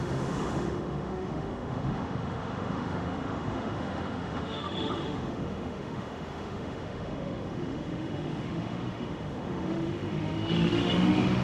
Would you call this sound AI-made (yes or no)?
yes